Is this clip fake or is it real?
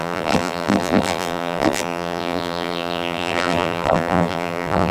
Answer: fake